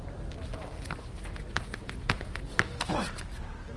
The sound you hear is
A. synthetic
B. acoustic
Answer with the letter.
B